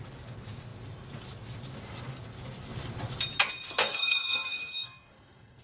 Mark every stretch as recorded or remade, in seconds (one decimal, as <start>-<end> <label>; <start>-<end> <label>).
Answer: 0.0-3.9 recorded; 3.9-5.6 remade